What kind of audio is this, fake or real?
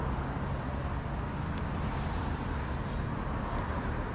real